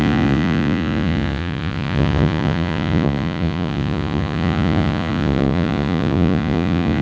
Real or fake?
fake